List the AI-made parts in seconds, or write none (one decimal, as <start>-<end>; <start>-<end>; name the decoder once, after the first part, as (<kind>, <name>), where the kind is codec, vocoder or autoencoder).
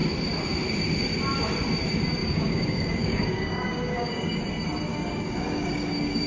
2.2-4.4 (codec, DAC); 4.9-6.3